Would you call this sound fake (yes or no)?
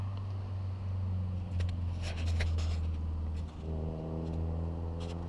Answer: no